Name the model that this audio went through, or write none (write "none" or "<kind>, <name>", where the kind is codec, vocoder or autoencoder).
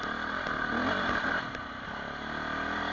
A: none